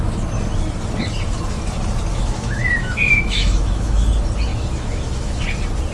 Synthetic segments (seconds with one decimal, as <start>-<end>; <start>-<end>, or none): 2.1-4.1; 4.5-5.4